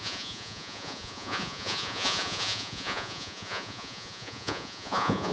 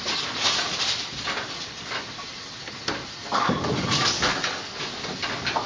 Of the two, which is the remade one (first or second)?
first